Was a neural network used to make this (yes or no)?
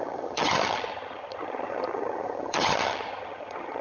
yes